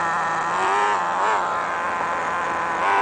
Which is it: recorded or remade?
recorded